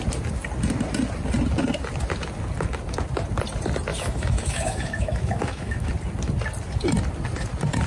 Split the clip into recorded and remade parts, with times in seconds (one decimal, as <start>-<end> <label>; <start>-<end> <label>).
0.0-3.9 recorded; 3.9-5.9 remade; 5.9-7.9 recorded